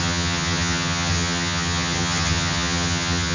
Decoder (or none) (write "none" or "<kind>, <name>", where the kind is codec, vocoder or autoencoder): vocoder, HiFi-GAN